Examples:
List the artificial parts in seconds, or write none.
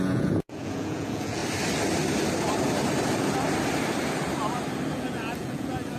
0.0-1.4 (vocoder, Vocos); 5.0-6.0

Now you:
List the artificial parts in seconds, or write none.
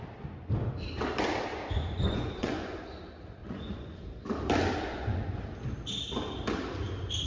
1.5-2.8 (vocoder, Vocos); 3.4-4.0; 4.9-5.4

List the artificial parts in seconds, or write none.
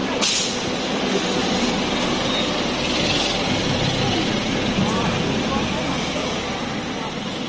none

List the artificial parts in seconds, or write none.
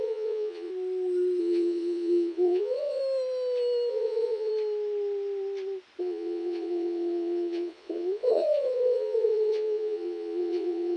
0.0-0.7 (vocoder, Vocos); 1.4-3.0; 3.9-4.5; 6.0-11.0